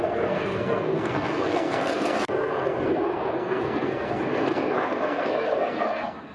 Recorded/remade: remade